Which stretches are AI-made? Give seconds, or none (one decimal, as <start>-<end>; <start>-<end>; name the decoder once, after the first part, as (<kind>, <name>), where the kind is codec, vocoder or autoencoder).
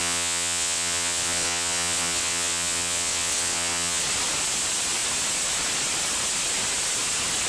0.0-4.0 (vocoder, WaveNeXt)